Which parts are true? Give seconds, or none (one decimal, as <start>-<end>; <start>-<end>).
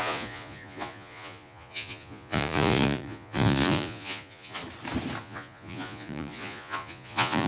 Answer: 4.6-5.2